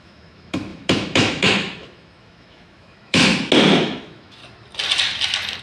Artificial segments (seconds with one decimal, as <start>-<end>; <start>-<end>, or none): 0.0-3.3; 3.8-4.4